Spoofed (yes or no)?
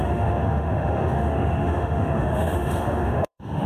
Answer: yes